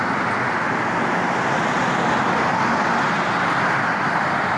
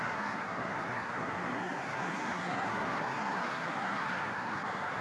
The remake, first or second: second